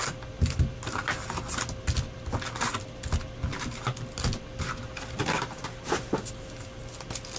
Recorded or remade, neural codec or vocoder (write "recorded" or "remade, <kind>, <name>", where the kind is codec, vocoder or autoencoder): recorded